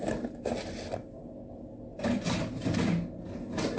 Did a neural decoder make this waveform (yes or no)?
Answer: no